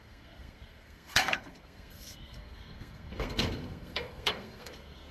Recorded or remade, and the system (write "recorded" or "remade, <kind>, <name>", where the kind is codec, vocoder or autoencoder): remade, codec, SNAC